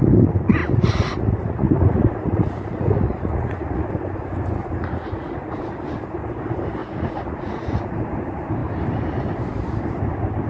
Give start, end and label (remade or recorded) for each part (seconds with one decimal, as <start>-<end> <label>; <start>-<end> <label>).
0.0-0.6 recorded; 0.6-3.9 remade; 3.9-4.6 recorded; 4.6-5.6 remade; 5.6-6.8 recorded; 6.8-7.8 remade; 7.8-10.5 recorded